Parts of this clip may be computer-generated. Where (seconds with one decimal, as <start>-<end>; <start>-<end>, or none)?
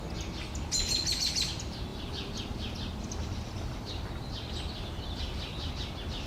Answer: 1.9-5.7